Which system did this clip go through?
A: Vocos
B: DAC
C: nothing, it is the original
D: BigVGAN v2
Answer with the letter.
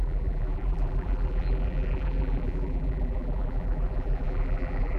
D